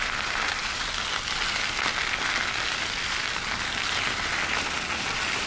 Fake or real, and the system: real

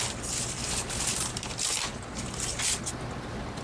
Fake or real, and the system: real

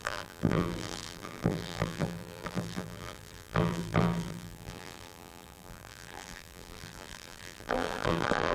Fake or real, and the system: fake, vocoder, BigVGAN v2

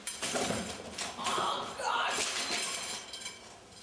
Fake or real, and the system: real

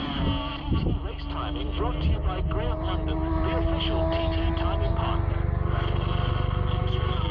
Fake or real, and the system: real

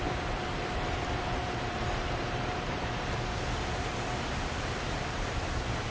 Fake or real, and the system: fake, vocoder, BigVGAN v2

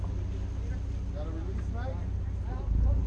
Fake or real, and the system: real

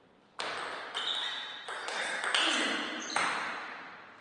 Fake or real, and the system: real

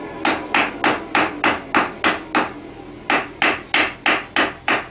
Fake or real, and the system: real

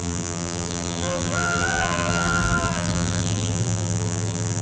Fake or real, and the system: fake, vocoder, BigVGAN v2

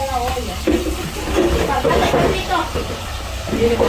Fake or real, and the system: real